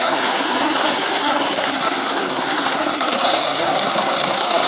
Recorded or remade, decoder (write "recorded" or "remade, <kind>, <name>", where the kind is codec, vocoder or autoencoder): remade, codec, SNAC